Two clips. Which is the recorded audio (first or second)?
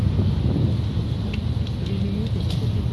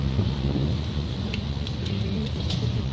first